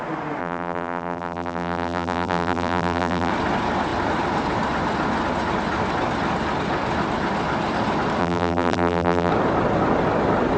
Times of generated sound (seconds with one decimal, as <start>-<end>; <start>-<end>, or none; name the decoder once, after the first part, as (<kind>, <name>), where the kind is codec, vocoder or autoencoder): 0.4-3.3 (vocoder, BigVGAN v2); 8.2-9.3